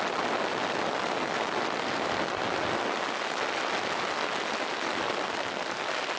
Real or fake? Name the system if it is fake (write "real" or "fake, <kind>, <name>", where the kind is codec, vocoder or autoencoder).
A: real